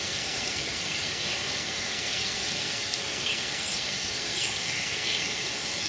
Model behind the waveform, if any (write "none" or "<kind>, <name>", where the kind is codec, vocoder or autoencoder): codec, SNAC